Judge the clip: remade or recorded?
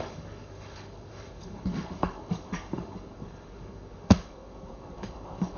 remade